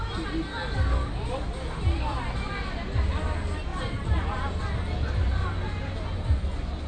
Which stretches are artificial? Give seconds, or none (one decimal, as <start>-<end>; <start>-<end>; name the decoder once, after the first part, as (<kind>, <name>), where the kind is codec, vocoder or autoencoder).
0.5-1.1 (codec, DAC)